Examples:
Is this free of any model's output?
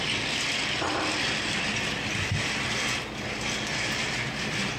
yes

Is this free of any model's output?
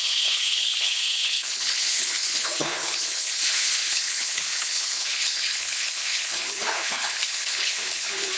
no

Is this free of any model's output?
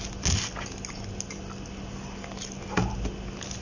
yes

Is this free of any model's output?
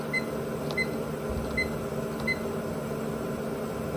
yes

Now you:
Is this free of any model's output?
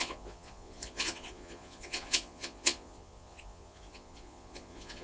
no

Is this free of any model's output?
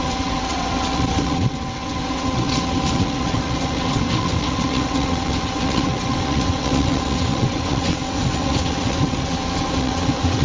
no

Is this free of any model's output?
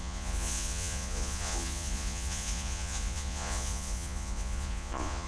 no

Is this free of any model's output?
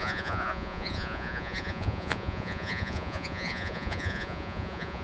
no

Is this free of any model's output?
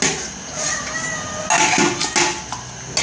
yes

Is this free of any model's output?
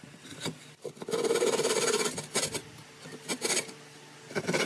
yes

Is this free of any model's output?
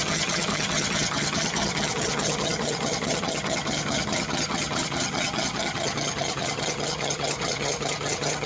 no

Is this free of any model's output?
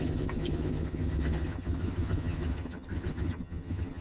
no